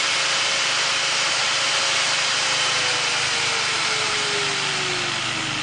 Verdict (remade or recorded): recorded